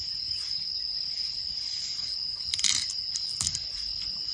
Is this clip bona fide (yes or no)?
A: yes